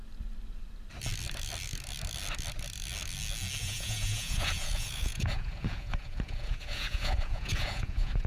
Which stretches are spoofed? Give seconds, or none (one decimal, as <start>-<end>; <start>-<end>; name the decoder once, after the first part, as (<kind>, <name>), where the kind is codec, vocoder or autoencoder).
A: 3.6-8.3 (vocoder, Vocos)

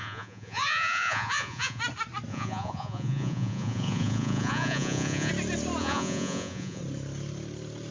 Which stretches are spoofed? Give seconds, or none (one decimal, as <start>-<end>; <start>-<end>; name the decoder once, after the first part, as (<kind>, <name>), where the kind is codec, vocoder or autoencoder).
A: 0.0-1.8 (vocoder, Vocos); 2.3-5.3; 5.8-6.8

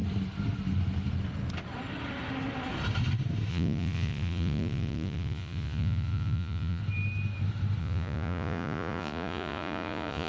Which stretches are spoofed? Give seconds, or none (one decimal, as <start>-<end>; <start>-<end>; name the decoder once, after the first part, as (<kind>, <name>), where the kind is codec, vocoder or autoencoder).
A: 3.5-6.8 (vocoder, Vocos); 7.8-10.3

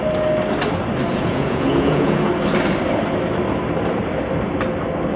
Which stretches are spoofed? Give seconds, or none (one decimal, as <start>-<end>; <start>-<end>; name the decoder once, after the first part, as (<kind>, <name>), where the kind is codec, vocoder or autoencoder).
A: 1.1-2.3 (vocoder, Vocos)

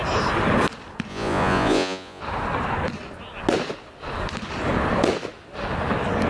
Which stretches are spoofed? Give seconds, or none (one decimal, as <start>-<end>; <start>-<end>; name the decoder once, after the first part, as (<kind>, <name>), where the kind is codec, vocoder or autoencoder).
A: 1.1-2.2 (vocoder, Vocos)

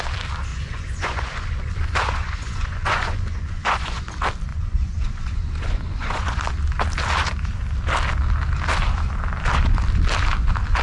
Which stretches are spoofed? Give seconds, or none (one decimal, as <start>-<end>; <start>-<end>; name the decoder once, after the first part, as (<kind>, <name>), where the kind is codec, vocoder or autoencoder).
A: 0.5-4.0 (vocoder, Vocos); 4.5-6.4

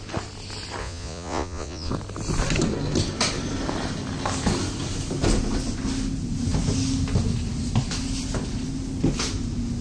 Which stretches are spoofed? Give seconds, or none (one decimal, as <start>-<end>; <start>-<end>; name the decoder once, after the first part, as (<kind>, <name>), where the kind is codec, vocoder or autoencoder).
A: 0.8-1.9 (vocoder, Vocos)

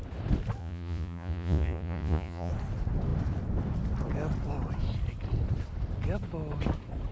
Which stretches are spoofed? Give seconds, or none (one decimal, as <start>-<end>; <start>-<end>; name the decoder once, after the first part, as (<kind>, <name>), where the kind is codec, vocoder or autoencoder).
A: 0.6-2.5 (vocoder, Vocos)